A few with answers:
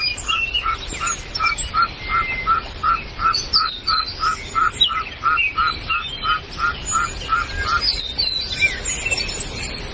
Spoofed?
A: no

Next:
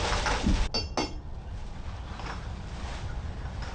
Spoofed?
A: no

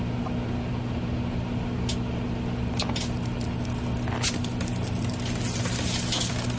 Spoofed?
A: no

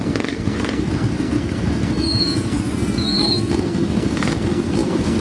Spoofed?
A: yes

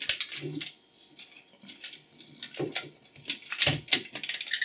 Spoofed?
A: no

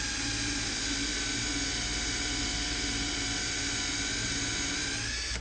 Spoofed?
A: no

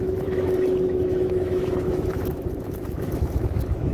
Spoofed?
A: yes